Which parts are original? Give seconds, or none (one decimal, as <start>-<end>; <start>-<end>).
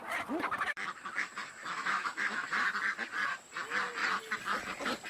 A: 0.0-1.6; 2.5-5.1